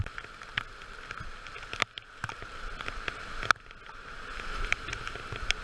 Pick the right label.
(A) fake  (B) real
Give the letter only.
B